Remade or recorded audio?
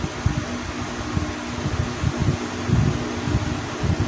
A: recorded